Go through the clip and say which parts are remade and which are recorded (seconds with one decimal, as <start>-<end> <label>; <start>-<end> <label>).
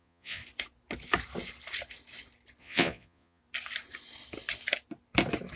0.0-0.4 remade; 0.4-2.6 recorded; 2.6-3.4 remade; 3.4-5.6 recorded